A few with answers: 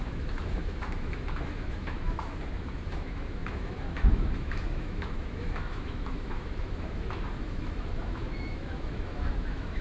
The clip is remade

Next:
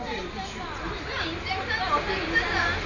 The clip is recorded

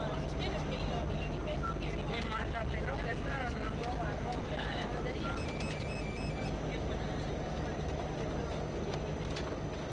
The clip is recorded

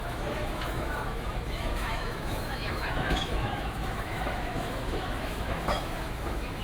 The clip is remade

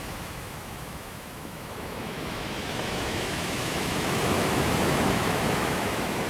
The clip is remade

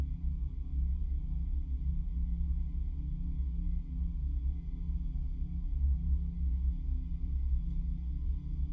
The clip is recorded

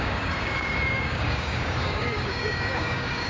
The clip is remade